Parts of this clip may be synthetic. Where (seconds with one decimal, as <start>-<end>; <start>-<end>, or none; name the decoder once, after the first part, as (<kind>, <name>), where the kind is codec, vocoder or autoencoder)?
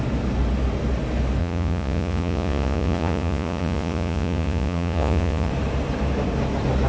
1.4-5.5 (vocoder, Vocos)